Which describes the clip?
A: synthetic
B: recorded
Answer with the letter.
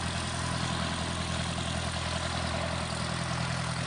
B